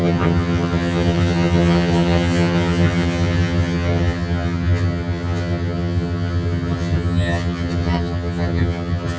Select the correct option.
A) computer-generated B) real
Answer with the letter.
A